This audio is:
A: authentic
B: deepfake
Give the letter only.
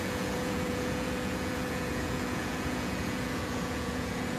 B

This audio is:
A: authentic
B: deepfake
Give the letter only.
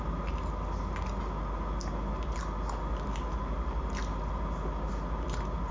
A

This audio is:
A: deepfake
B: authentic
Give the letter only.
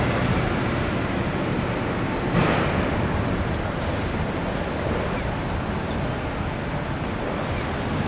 B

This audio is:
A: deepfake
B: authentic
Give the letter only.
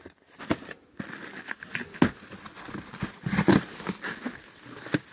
B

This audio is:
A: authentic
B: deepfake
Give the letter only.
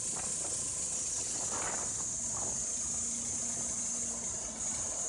A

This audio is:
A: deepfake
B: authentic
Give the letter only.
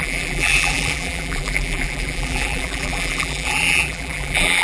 A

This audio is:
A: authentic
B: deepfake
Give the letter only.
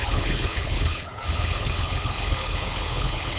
B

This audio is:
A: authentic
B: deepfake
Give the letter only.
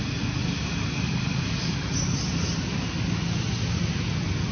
A